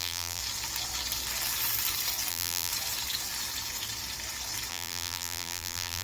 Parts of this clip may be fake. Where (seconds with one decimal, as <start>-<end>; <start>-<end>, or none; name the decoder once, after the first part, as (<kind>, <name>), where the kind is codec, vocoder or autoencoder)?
0.0-0.4 (vocoder, BigVGAN v2); 2.3-2.7; 4.7-6.0